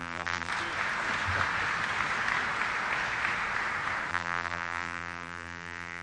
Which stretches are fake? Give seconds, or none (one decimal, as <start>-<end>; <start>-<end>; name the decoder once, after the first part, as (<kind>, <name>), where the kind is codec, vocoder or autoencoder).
0.0-0.5 (vocoder, BigVGAN v2); 4.1-6.0